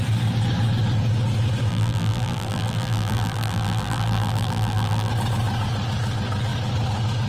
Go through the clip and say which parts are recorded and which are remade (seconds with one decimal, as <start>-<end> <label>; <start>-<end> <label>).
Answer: 0.0-1.7 recorded; 1.7-5.1 remade; 5.1-7.3 recorded